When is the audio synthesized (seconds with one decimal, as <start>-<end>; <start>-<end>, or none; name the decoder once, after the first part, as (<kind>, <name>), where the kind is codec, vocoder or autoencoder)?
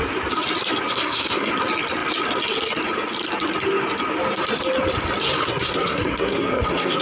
0.9-1.5 (codec, SNAC); 5.4-7.0